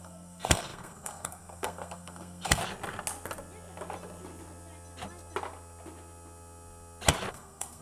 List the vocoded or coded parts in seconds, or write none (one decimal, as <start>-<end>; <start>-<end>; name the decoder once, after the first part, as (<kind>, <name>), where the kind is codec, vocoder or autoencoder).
0.0-2.6 (codec, SNAC); 7.3-7.8